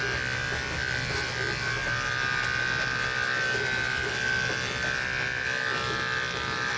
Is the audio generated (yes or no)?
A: no